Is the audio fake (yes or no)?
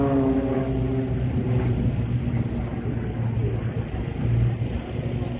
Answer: no